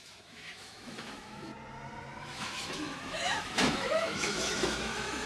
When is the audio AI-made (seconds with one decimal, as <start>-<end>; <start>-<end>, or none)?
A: 0.0-1.5; 2.2-5.3